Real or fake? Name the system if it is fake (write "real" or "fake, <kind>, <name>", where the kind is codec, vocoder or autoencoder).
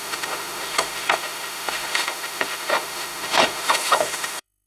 fake, autoencoder, DAC-VAE